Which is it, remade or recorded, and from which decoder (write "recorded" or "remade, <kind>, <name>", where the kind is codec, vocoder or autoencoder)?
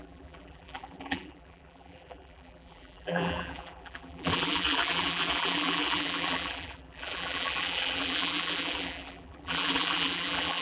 remade, vocoder, BigVGAN v2